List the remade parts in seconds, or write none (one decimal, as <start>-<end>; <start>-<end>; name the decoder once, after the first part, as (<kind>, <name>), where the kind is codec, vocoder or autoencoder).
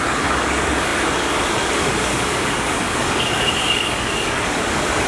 0.0-5.1 (codec, DAC)